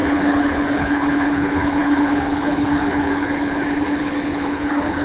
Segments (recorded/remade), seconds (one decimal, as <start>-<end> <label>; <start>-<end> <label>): 0.0-5.0 remade